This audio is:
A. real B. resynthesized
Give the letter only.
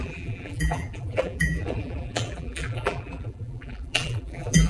B